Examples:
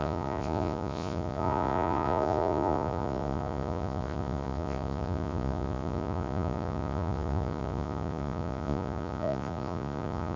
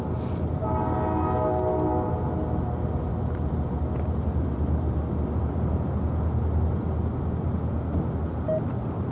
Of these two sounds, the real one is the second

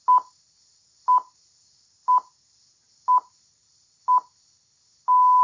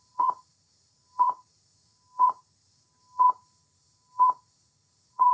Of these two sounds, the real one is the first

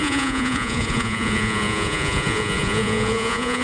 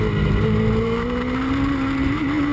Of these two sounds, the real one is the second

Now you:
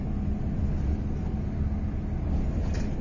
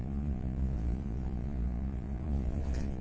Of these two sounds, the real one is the first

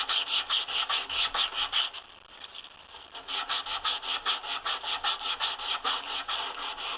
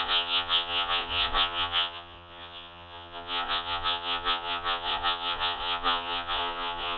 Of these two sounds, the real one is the first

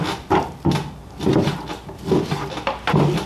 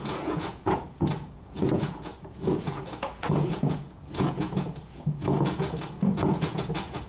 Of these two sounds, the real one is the first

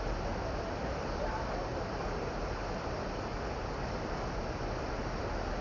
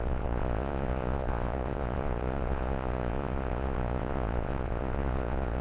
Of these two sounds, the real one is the first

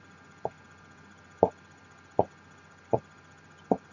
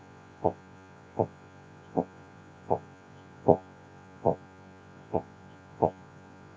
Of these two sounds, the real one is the first